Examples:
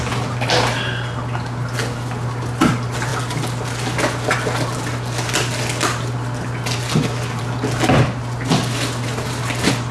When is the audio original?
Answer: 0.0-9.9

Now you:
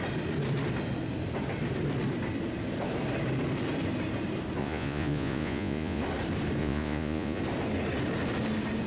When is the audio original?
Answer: 0.0-4.6; 6.0-6.6; 7.4-8.9

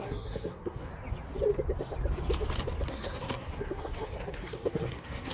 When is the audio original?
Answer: 0.9-2.9

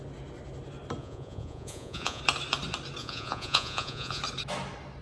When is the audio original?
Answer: 0.0-1.0; 2.2-3.0; 4.2-5.0

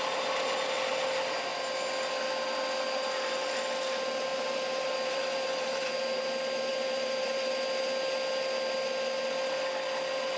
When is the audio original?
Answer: 0.0-4.3; 6.2-6.7; 7.5-10.4

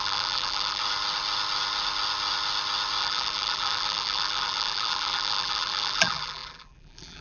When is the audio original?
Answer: 0.8-3.0